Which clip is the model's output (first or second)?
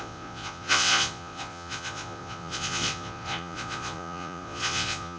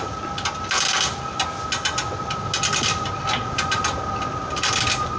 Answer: first